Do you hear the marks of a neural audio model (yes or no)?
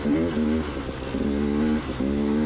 no